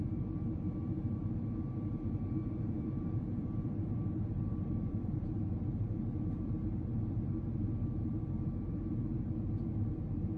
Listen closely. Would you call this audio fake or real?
fake